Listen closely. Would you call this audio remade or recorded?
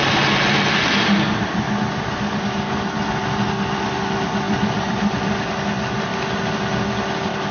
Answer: recorded